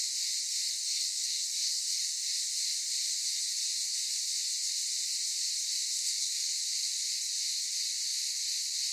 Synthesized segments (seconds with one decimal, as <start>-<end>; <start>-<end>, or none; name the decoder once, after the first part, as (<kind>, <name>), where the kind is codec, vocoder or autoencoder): 0.7-2.3 (codec, SNAC); 5.9-6.5